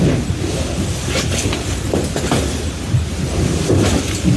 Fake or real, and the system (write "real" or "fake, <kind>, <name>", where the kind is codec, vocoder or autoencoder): real